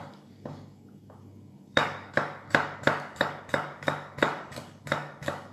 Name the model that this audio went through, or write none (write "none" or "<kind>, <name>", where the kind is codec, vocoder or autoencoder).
codec, DAC